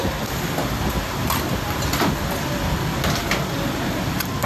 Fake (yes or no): no